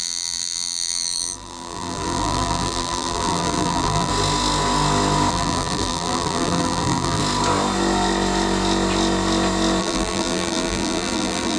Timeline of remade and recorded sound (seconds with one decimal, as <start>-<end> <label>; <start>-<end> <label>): 0.0-4.1 remade; 4.1-5.3 recorded; 5.3-7.2 remade; 7.2-9.8 recorded; 9.8-11.6 remade